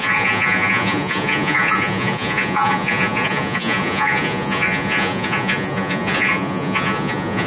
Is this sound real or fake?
fake